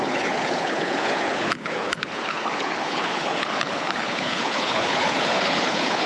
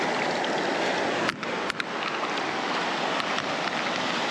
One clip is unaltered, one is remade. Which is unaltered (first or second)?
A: second